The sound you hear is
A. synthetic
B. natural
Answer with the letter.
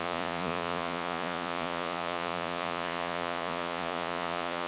A